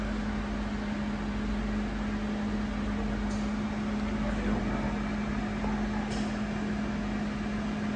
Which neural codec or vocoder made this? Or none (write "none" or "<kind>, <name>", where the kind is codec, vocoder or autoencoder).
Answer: none